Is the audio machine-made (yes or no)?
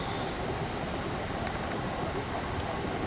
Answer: no